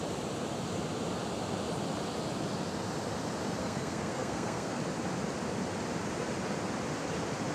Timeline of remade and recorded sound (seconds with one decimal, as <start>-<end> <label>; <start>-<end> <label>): 0.0-3.6 recorded; 3.6-4.8 remade; 4.8-7.5 recorded